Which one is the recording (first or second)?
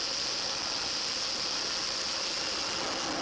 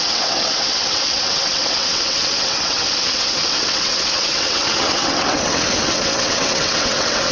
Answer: first